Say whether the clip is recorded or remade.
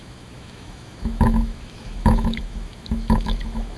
remade